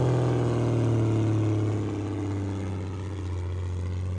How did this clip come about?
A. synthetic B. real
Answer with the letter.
B